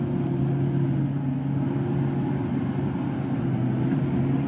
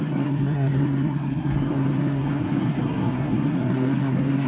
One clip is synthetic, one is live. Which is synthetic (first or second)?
second